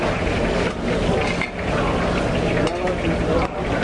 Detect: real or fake real